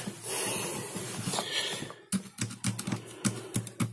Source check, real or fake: real